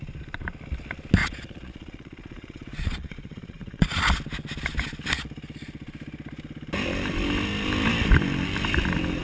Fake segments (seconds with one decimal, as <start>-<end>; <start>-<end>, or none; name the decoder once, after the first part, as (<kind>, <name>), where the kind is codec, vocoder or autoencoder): 1.2-4.0 (vocoder, Vocos)